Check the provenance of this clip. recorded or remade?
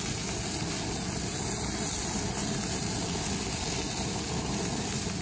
recorded